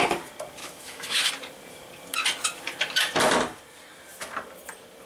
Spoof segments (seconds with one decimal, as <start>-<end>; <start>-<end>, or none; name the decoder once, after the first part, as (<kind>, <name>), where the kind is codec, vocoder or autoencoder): 0.6-1.3 (autoencoder, DAC-VAE)